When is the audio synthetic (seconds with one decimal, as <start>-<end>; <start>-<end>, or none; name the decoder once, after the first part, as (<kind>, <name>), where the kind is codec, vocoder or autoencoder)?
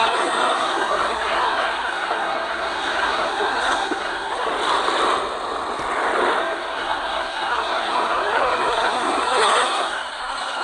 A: 0.0-4.5 (codec, SNAC); 6.4-10.6